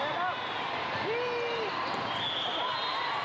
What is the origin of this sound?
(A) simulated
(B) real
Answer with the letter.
B